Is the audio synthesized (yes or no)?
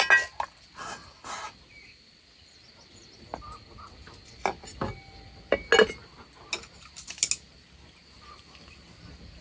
no